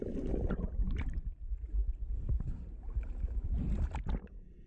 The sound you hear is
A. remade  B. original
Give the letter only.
B